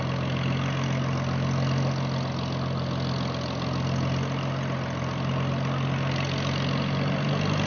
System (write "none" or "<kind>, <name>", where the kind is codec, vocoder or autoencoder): none